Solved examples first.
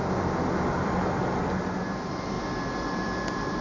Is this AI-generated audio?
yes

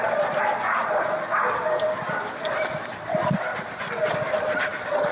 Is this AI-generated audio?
no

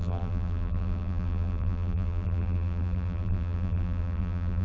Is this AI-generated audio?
yes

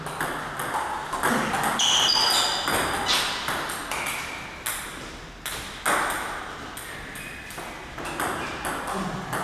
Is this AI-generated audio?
no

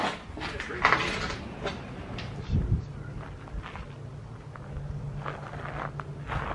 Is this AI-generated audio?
no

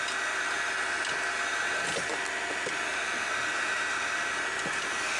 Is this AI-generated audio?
no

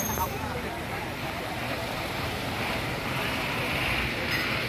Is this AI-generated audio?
yes